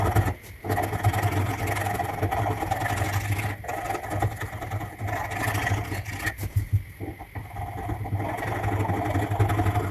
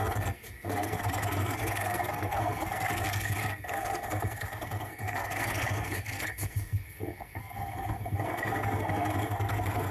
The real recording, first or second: first